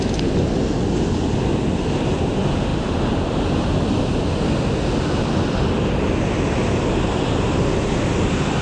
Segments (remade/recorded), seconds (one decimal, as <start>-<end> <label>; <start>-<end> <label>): 0.0-8.6 recorded

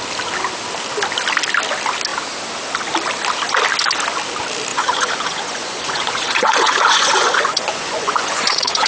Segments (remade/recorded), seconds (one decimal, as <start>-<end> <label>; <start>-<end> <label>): 0.0-4.7 recorded; 4.7-8.9 remade

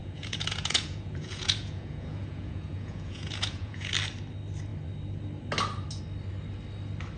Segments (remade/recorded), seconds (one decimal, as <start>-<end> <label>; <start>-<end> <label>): 0.0-3.9 remade; 3.9-7.2 recorded

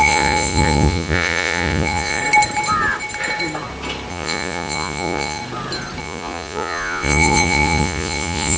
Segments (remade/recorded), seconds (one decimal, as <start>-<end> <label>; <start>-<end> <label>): 0.0-2.2 remade; 2.2-4.1 recorded; 4.1-5.4 remade; 5.4-6.0 recorded; 6.0-8.6 remade

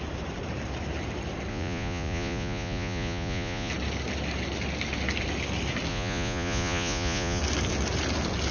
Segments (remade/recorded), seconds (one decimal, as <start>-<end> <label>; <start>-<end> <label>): 0.0-1.5 recorded; 1.5-3.7 remade; 3.7-5.9 recorded; 5.9-7.4 remade; 7.4-8.5 recorded

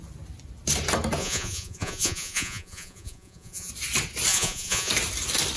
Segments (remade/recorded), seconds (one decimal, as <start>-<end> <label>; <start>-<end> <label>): 0.0-1.2 recorded; 1.2-3.7 remade; 3.7-4.3 recorded; 4.3-4.9 remade; 4.9-5.6 recorded